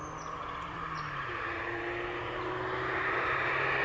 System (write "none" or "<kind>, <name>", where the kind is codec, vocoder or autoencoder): none